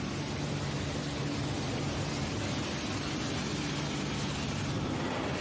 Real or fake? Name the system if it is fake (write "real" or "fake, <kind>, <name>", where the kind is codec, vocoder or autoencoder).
real